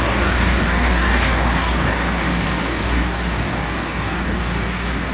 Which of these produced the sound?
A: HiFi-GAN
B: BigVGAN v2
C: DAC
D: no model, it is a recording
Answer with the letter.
C